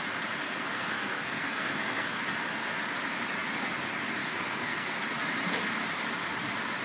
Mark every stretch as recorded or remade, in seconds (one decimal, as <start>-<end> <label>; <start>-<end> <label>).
0.0-0.4 recorded; 0.4-2.2 remade; 2.2-4.2 recorded; 4.2-5.0 remade; 5.0-6.8 recorded